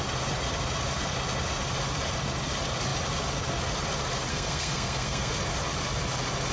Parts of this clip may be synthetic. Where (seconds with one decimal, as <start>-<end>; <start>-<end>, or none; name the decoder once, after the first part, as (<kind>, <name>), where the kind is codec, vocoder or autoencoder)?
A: 4.3-5.3 (codec, SNAC)

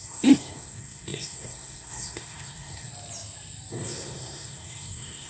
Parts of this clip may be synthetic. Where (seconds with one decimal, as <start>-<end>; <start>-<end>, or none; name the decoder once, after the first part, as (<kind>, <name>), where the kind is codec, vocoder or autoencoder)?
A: 0.0-2.9 (codec, SNAC); 3.7-5.3